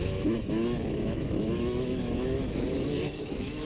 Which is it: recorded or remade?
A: remade